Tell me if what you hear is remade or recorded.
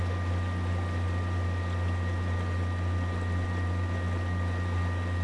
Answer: recorded